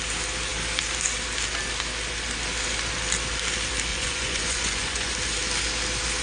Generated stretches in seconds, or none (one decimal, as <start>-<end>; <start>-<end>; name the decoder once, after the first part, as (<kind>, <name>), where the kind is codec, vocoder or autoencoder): 3.9-5.1 (vocoder, Vocos)